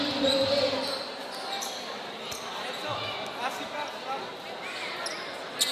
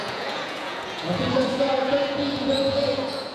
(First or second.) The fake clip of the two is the second